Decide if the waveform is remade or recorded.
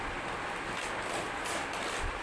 recorded